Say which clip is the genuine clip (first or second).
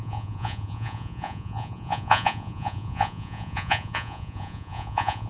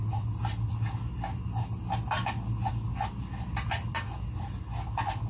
second